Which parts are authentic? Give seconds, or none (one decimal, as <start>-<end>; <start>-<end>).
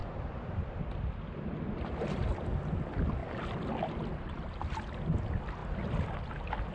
0.8-6.7